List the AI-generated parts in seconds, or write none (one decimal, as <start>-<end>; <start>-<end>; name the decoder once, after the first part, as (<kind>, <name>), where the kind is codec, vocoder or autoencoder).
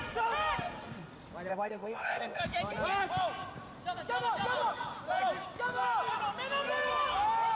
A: 1.5-2.4 (codec, ZipCodec)